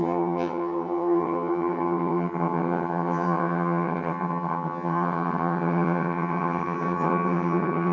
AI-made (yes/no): yes